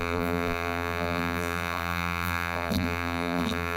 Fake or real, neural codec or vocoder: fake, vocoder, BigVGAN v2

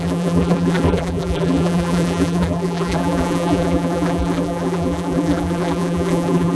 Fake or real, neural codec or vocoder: fake, vocoder, BigVGAN v2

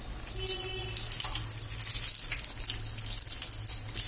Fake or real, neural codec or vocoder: real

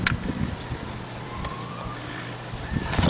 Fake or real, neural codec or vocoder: fake, vocoder, BigVGAN v2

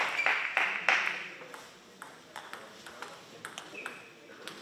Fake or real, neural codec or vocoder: real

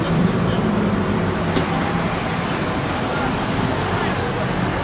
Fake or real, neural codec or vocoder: fake, vocoder, BigVGAN v2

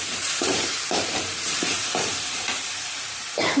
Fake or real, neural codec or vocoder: fake, vocoder, BigVGAN v2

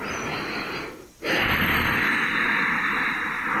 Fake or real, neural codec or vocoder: real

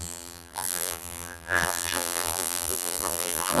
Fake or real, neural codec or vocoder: fake, vocoder, BigVGAN v2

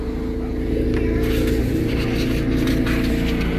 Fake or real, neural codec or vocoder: real